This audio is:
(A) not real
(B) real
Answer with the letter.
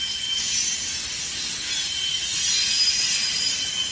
B